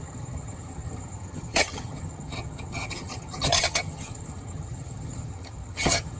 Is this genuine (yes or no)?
no